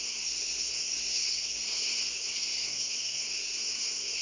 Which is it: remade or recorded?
remade